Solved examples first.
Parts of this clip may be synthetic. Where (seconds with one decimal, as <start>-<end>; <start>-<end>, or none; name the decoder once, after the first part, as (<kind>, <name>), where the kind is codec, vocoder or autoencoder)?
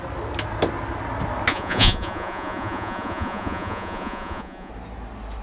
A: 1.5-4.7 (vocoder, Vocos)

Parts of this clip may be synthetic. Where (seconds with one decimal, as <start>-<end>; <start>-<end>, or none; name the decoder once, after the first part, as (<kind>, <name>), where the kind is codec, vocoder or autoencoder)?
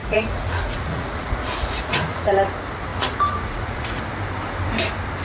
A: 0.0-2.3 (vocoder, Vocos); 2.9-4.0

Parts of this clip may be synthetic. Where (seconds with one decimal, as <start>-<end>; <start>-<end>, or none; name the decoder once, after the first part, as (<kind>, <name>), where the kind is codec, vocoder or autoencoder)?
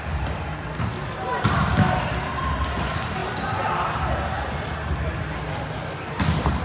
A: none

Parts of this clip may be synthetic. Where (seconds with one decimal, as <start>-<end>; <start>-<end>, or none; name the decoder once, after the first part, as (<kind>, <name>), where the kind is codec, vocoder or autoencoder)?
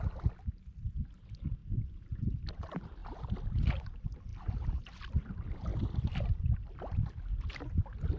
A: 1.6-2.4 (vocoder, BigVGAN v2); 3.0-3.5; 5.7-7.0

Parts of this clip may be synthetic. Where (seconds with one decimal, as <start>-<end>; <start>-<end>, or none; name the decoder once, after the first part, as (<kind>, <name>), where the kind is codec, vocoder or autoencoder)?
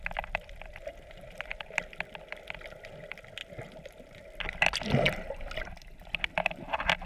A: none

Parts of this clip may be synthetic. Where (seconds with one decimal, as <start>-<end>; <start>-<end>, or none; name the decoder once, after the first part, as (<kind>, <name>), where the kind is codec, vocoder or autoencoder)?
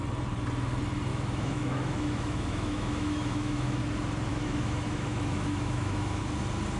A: 1.1-3.8 (autoencoder, DAC-VAE); 4.3-6.2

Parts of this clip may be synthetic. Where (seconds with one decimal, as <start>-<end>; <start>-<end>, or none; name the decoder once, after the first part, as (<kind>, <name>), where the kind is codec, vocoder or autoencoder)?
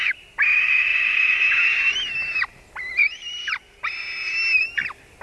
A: none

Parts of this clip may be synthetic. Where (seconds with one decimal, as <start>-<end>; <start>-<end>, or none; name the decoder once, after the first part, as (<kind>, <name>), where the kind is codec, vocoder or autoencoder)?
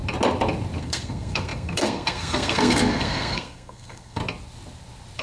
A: 0.8-4.2 (codec, SNAC)